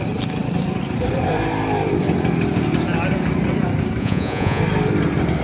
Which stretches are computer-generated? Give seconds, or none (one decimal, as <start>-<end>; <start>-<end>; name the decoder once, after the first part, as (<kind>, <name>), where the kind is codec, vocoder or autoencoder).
4.0-4.6 (vocoder, Vocos)